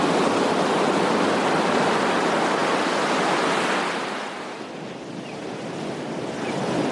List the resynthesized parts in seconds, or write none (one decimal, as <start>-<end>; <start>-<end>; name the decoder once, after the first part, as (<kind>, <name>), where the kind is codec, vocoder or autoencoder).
none